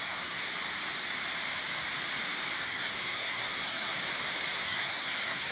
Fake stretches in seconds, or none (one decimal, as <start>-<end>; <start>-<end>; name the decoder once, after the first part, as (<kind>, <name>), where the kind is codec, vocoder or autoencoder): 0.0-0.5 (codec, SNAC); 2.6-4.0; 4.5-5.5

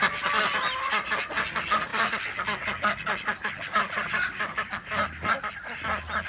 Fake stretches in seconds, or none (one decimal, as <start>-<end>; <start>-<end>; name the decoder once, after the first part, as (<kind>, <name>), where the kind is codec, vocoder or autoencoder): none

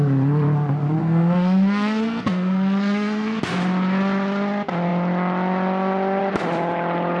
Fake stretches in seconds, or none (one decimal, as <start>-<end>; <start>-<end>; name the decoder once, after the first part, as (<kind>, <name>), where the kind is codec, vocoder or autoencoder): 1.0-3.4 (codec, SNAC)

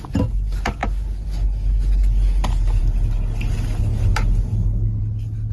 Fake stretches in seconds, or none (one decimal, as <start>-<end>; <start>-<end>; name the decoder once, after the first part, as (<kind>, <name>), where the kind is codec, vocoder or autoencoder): none

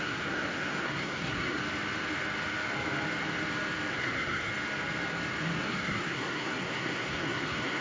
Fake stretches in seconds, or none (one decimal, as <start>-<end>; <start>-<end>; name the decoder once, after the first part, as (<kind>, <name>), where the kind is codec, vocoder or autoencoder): 0.0-1.6 (codec, SNAC); 3.9-4.5; 5.6-7.8

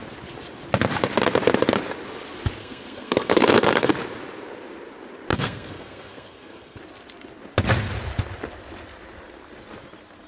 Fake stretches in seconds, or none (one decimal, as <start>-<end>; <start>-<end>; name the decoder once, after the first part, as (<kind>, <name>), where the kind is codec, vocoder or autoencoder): 2.6-3.9 (codec, SNAC); 5.3-6.8